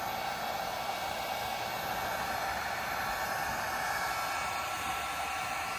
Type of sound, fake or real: real